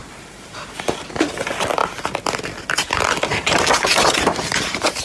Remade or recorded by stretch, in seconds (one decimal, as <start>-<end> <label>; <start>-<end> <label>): 0.0-1.2 remade; 1.2-3.3 recorded; 3.3-5.0 remade